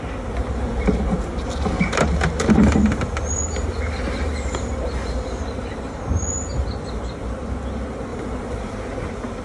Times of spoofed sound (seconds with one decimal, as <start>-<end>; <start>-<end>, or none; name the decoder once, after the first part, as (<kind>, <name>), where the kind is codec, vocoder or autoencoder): 0.5-5.4 (vocoder, BigVGAN v2); 8.1-8.7

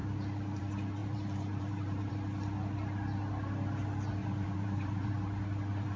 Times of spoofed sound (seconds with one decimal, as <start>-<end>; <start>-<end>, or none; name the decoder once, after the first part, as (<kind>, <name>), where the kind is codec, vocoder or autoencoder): 1.0-2.1 (vocoder, BigVGAN v2); 4.2-5.1

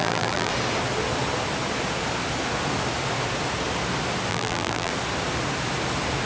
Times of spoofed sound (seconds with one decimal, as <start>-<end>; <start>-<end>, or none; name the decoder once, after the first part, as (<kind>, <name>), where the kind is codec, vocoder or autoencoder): 0.0-0.5 (vocoder, BigVGAN v2); 4.3-4.9

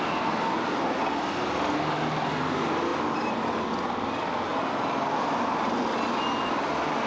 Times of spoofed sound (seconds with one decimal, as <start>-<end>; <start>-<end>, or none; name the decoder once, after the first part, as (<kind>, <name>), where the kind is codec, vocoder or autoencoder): none

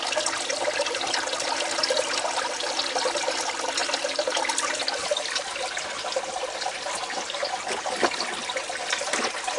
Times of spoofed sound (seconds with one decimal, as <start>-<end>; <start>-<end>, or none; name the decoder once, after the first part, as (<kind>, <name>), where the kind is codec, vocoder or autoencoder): none

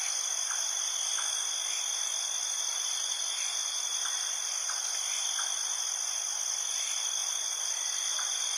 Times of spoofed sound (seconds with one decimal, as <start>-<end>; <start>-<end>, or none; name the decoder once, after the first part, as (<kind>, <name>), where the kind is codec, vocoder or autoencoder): none

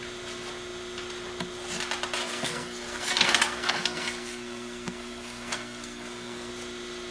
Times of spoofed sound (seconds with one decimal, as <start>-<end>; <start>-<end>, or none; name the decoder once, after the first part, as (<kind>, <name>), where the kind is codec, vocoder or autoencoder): 2.2-6.5 (codec, SNAC)

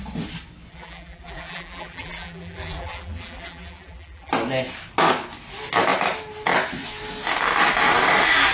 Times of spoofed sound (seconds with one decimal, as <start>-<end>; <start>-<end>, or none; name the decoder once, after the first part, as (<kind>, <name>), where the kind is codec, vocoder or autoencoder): 0.7-4.3 (vocoder, BigVGAN v2)